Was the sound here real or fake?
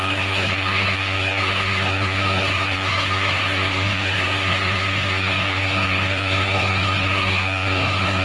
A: fake